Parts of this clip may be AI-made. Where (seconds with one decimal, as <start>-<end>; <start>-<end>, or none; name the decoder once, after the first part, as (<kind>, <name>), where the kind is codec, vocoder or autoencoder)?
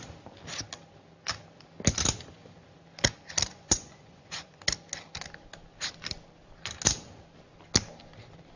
3.5-4.6 (vocoder, Vocos)